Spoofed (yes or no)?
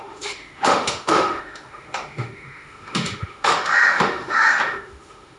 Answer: yes